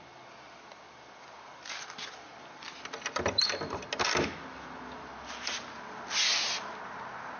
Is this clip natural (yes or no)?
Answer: yes